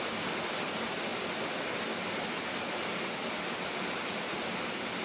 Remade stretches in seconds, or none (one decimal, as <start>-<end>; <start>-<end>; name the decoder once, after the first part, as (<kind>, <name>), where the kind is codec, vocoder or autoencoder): 0.0-1.1 (vocoder, BigVGAN v2); 4.1-5.0